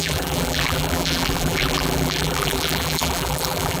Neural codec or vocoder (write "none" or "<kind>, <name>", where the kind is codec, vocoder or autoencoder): vocoder, BigVGAN v2